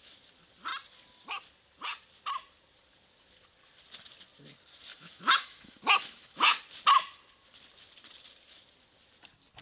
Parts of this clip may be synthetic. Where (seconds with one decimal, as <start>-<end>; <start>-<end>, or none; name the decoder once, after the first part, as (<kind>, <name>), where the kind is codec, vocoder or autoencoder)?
4.9-6.6 (autoencoder, DAC-VAE)

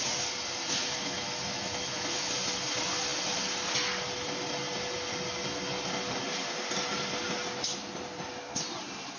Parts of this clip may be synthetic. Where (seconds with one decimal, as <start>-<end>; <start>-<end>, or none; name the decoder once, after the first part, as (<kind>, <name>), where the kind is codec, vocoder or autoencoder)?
0.8-2.3 (autoencoder, DAC-VAE)